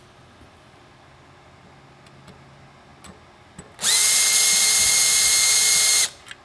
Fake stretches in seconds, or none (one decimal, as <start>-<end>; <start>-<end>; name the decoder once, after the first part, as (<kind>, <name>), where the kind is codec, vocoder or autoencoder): none